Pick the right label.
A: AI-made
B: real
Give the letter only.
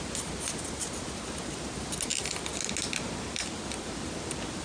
B